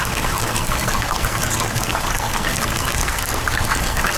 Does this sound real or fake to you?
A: fake